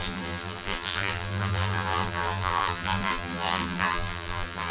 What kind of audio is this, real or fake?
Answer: fake